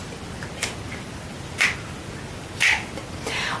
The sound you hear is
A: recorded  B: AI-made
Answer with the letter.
A